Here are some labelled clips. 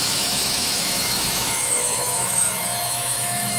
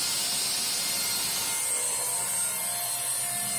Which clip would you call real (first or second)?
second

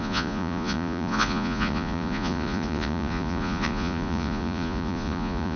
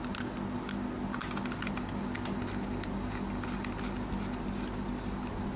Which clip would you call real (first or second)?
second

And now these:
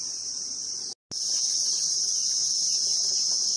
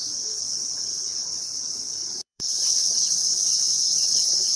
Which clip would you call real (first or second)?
first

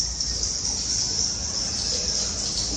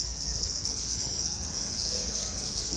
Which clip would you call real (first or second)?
first